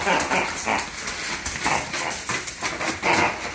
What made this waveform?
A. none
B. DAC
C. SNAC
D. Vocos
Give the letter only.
A